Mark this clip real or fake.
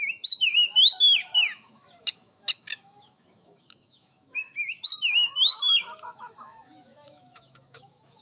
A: fake